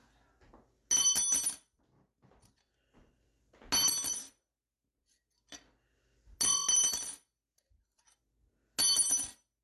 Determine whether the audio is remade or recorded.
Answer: recorded